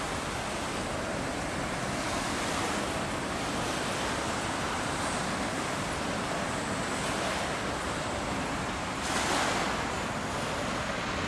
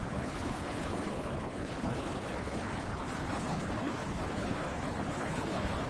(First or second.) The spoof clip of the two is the second